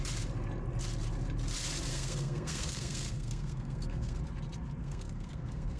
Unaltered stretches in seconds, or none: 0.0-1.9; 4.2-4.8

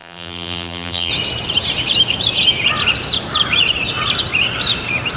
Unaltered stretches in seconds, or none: 1.1-5.2

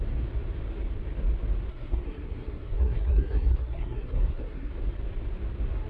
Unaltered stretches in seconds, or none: 0.0-1.7; 4.7-5.9

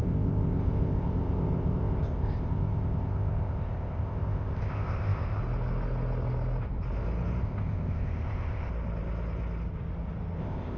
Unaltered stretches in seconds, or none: 5.4-7.4; 8.7-10.4

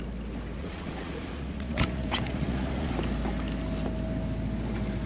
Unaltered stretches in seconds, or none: 0.0-0.6; 2.9-5.1